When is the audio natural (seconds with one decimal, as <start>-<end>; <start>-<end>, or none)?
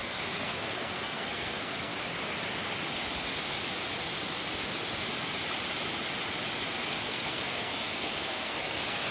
1.9-6.9